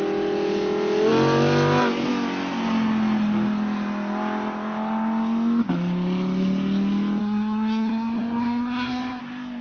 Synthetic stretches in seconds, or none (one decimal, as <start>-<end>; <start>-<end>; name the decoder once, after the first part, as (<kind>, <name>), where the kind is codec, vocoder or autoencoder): 7.2-9.2 (codec, SNAC)